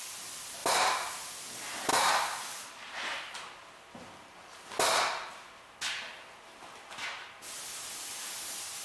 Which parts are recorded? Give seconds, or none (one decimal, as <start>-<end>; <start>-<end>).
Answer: 0.0-0.6; 1.3-8.8